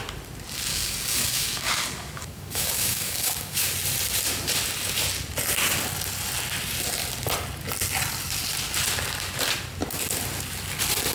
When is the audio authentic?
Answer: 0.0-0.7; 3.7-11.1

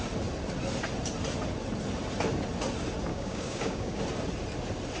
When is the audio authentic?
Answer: 0.0-3.1; 4.0-5.0